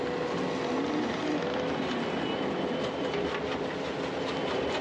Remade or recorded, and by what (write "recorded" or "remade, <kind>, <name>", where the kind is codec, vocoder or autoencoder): recorded